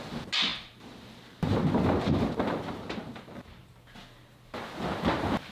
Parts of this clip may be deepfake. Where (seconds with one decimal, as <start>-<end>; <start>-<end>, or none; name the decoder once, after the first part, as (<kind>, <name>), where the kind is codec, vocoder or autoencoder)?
none